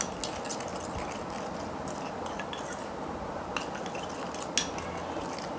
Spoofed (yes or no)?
no